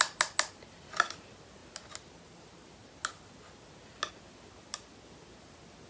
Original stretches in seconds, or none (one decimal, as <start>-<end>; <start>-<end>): 0.0-5.9